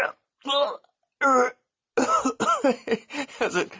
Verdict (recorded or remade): recorded